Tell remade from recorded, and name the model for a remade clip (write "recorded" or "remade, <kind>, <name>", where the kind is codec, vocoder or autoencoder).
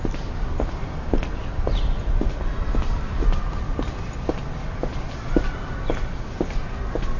recorded